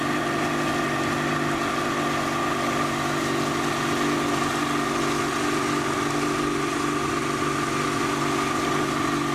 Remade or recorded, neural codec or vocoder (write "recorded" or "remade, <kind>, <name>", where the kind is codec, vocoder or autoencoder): recorded